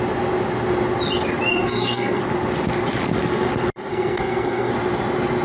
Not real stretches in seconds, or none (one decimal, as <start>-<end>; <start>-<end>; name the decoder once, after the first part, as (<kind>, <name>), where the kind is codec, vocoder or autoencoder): 1.5-2.2 (codec, SNAC); 3.9-4.7